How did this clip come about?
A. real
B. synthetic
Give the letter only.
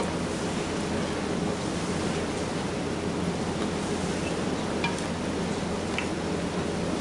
A